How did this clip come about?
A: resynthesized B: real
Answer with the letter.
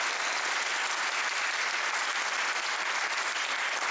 B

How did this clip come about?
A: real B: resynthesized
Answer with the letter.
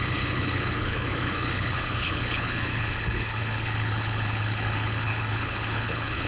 B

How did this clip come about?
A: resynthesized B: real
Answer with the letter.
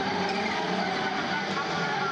B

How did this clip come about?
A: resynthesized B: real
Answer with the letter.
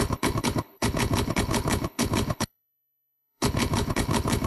A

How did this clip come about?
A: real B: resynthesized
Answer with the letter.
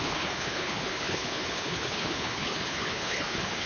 B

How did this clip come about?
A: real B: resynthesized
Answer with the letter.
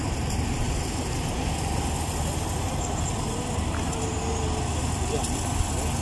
A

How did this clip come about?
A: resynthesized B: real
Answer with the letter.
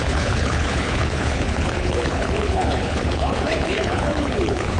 A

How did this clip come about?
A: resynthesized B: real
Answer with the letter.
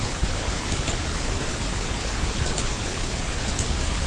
A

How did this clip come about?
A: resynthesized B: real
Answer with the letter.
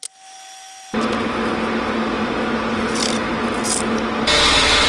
B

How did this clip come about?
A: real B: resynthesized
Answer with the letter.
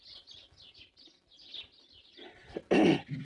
A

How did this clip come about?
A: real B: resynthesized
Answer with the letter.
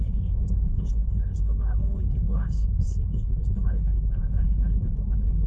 B